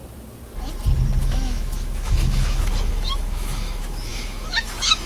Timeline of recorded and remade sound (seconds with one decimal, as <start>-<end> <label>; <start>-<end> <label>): 0.0-1.2 recorded; 1.2-5.1 remade